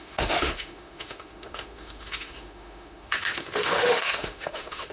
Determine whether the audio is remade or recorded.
remade